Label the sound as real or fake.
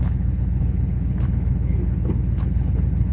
fake